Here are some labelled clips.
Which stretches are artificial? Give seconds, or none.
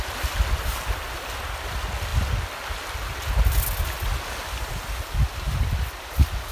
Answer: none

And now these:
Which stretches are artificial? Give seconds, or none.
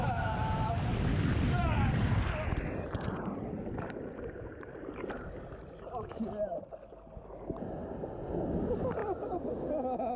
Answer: 0.9-5.1 (vocoder, BigVGAN v2)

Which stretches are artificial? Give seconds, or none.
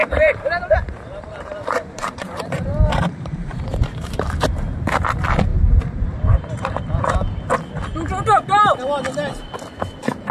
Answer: 0.0-4.5 (vocoder, BigVGAN v2); 5.5-6.8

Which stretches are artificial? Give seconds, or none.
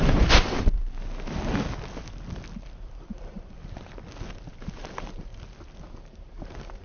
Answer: 0.0-0.8 (vocoder, BigVGAN v2); 4.6-5.3; 5.9-6.8